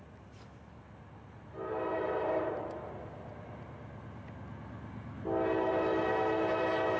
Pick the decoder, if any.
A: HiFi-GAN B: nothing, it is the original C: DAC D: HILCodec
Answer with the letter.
B